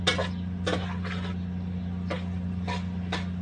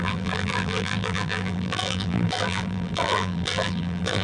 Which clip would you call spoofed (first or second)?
second